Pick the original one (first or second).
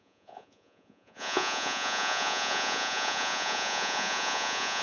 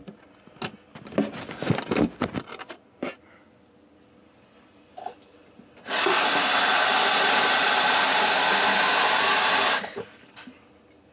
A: second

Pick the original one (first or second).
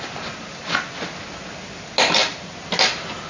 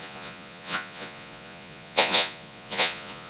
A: first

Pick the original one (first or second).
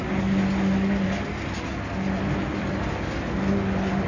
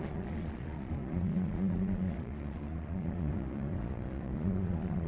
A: first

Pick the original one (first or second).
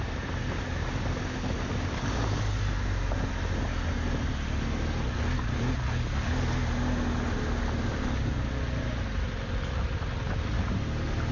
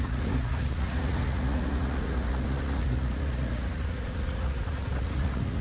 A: first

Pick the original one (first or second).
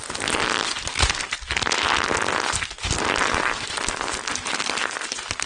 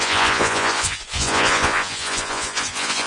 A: first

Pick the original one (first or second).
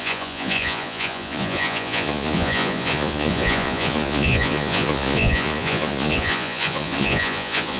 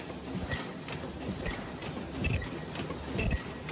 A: second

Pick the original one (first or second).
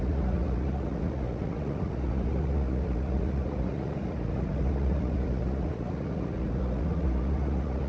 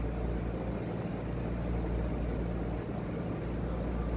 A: second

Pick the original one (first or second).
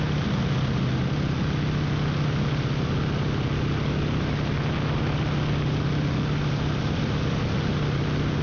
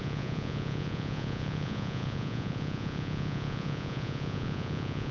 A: first